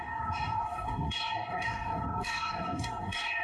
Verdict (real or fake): fake